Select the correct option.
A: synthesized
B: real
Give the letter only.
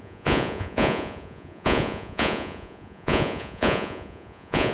A